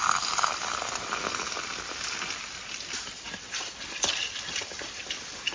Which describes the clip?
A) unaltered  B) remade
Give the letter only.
A